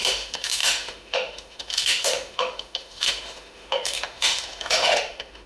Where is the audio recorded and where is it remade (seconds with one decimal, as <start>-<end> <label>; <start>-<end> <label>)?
0.0-5.5 remade